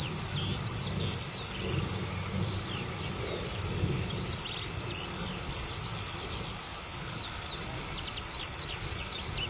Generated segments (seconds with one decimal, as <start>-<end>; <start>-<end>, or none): none